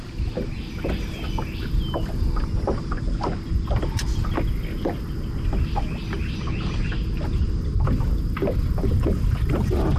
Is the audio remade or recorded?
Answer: recorded